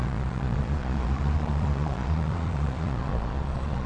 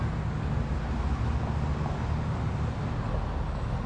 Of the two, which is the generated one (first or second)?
first